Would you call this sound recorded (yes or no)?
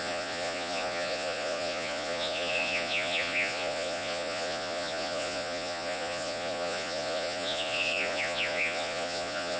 no